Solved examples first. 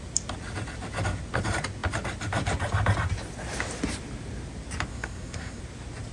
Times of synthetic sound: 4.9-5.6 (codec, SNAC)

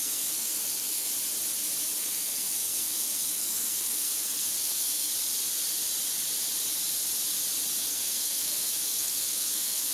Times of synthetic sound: 0.0-1.1 (codec, SNAC); 2.0-5.1; 7.8-9.9